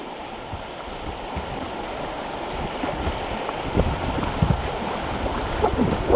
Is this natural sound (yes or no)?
yes